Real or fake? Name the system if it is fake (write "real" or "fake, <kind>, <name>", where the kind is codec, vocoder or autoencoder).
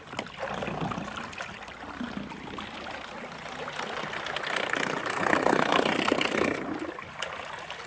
real